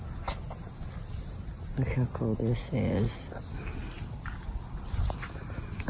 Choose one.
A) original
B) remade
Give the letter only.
A